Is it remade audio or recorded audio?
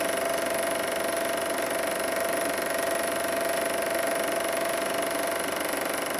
recorded